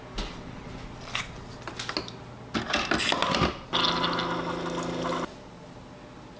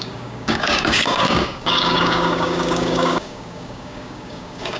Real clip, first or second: first